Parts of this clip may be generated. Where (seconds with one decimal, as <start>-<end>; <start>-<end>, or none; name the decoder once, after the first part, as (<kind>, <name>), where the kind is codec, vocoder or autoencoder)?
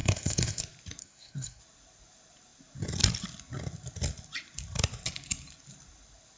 0.0-0.6 (codec, SNAC); 1.0-1.6